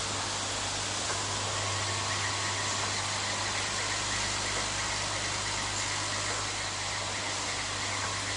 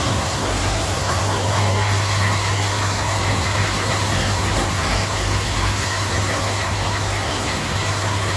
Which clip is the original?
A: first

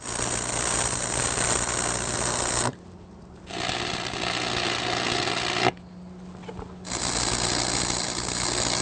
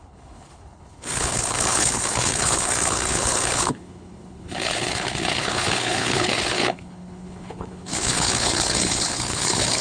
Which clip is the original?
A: first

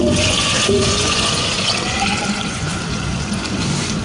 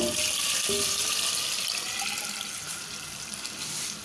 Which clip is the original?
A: second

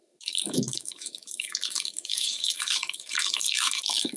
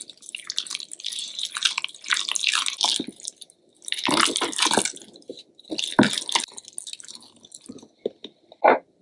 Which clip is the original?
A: second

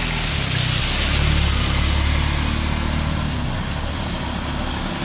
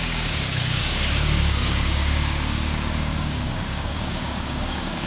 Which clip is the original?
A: first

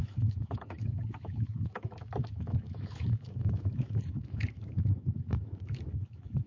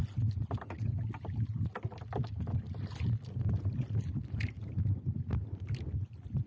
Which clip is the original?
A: second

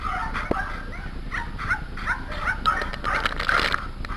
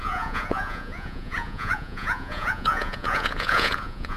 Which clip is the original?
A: first